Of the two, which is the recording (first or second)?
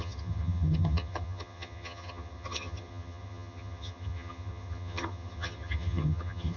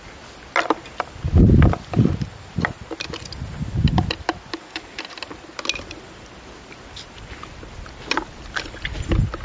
second